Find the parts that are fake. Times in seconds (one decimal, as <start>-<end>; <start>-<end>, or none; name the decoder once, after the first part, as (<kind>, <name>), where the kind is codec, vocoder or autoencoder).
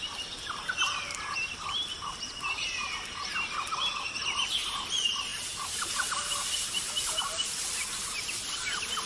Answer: none